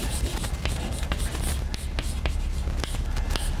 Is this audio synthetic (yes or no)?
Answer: no